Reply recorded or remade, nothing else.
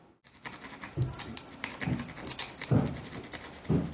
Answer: recorded